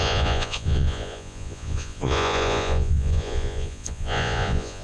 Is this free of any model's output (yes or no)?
no